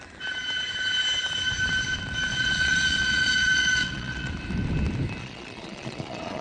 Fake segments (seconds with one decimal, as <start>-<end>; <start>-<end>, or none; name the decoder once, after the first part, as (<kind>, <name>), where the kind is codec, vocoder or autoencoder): 2.3-4.3 (vocoder, Vocos); 5.2-6.4